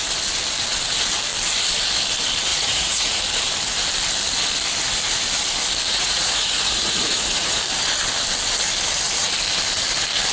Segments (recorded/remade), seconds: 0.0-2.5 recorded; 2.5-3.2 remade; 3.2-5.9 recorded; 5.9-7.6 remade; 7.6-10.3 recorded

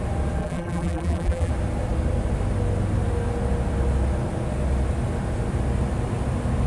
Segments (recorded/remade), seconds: 0.0-0.4 recorded; 0.4-1.5 remade; 1.5-6.7 recorded